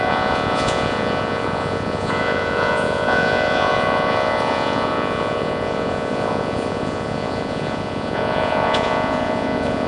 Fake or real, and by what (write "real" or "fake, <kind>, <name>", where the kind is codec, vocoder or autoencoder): fake, vocoder, Vocos